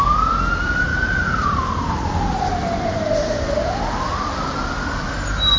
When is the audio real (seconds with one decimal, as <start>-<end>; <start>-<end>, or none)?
0.0-0.9; 4.3-5.6